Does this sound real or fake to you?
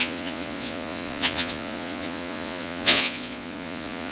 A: fake